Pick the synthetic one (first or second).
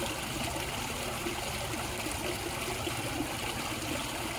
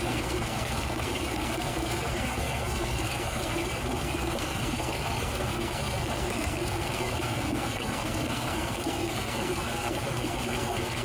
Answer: second